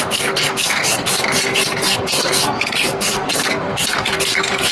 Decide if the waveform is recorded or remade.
remade